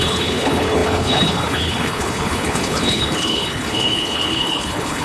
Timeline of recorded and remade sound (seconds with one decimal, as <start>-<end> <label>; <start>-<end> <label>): 0.0-5.0 remade